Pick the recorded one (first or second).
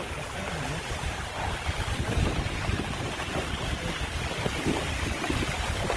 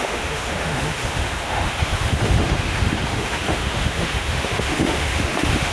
first